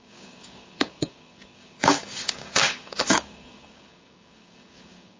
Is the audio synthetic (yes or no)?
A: yes